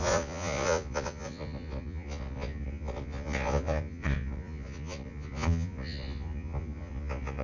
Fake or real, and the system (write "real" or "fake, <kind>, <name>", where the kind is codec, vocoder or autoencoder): fake, vocoder, Vocos